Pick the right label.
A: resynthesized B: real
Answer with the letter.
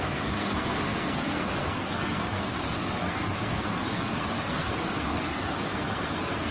A